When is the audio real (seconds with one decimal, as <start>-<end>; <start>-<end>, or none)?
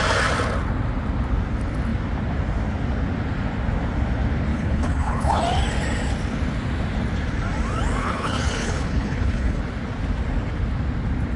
0.0-4.5; 5.4-8.0; 9.6-11.4